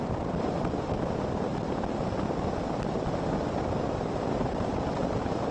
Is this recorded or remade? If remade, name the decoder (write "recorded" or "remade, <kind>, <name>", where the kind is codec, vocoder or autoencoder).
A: recorded